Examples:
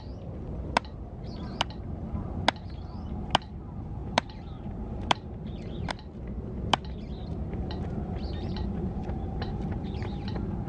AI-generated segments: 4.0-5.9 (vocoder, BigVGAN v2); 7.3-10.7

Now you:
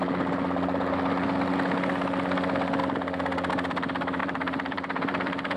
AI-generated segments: 4.2-5.6 (vocoder, BigVGAN v2)

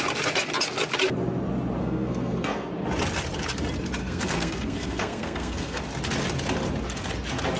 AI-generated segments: 1.8-2.7 (codec, SNAC); 4.0-5.8

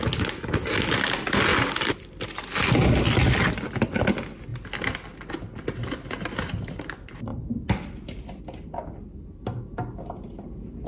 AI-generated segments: none

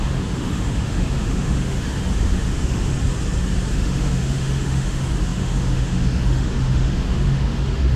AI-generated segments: 0.0-2.9 (autoencoder, DAC-VAE); 3.7-8.0

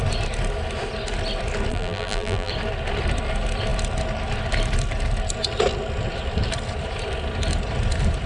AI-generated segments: 1.7-2.5 (vocoder, BigVGAN v2)

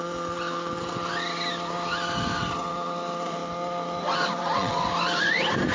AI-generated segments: 4.4-4.9 (vocoder, WaveNeXt)